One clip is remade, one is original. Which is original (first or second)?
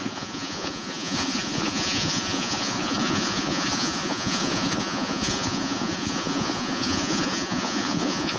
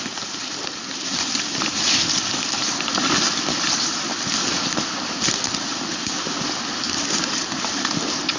second